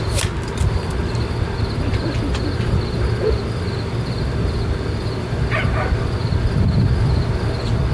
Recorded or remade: recorded